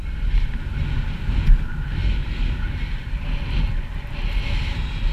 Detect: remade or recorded recorded